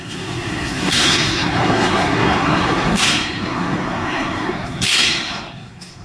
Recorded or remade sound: remade